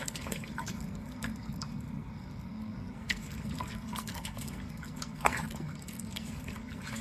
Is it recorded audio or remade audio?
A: remade